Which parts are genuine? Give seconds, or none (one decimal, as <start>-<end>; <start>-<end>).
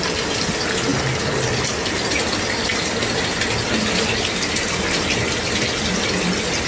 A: 0.0-6.7